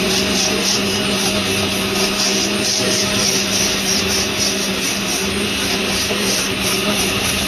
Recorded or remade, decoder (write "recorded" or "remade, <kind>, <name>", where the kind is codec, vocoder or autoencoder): recorded